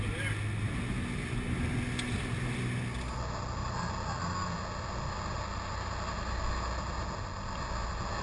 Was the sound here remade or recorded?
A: recorded